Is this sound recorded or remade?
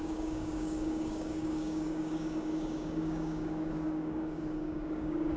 remade